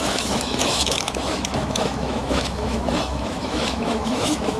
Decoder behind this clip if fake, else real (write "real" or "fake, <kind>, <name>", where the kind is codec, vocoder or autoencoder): fake, autoencoder, DAC-VAE